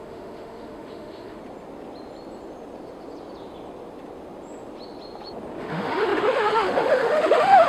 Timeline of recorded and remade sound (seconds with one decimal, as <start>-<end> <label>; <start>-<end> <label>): 0.0-1.4 remade; 1.4-5.6 recorded; 5.6-7.7 remade